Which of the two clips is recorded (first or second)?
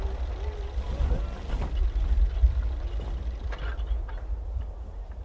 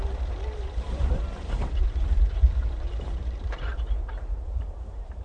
first